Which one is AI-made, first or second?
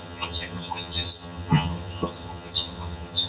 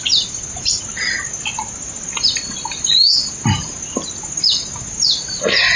first